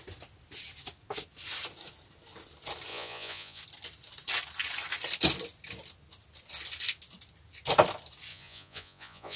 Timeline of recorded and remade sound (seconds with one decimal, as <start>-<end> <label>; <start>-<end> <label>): 0.0-2.9 recorded; 2.9-3.6 remade; 3.6-8.3 recorded; 8.3-9.4 remade